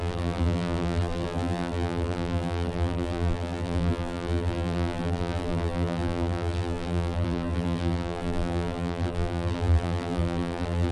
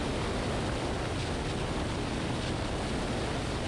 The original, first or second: second